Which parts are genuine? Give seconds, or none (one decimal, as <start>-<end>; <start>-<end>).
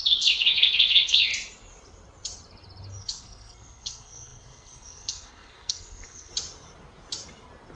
1.3-3.0; 6.3-7.8